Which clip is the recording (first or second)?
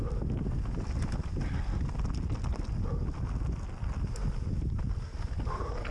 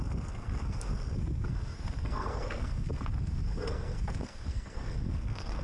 first